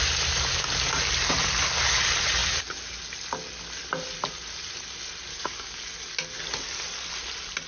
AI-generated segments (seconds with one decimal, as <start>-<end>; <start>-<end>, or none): 5.3-5.8